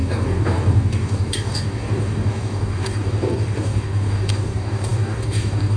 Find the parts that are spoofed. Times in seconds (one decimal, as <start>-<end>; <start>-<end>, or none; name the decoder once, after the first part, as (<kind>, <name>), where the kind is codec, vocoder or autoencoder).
0.0-5.8 (codec, DAC)

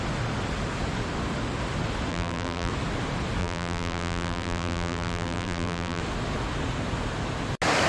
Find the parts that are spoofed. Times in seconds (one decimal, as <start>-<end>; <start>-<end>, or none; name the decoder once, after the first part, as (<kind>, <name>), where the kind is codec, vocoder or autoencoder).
2.1-2.7 (vocoder, BigVGAN v2); 3.4-6.0

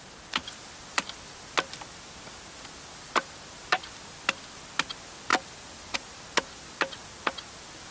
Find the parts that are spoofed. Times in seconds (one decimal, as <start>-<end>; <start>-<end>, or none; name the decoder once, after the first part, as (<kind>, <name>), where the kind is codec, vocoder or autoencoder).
none

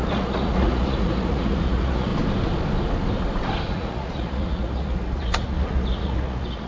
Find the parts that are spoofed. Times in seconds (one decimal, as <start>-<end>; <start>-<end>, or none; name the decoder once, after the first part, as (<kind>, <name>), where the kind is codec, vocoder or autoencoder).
0.0-2.1 (vocoder, Vocos); 3.7-6.7

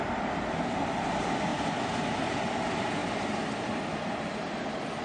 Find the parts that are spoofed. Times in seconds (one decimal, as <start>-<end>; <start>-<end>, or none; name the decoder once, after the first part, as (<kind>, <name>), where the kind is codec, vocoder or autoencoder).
0.0-5.0 (vocoder, BigVGAN v2)

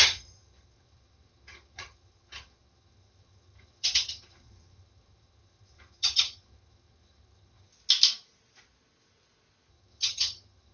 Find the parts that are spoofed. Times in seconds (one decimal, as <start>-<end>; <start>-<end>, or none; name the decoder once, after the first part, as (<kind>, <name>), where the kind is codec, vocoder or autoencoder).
0.0-7.7 (vocoder, HiFi-GAN); 9.7-10.7